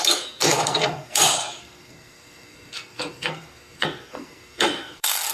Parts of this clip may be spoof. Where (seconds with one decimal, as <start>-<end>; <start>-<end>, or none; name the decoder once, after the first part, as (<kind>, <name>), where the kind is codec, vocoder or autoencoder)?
0.0-5.3 (codec, SNAC)